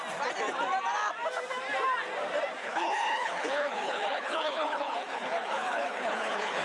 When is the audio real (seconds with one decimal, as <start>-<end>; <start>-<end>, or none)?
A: 0.0-2.6